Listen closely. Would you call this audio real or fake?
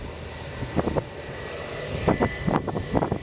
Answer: real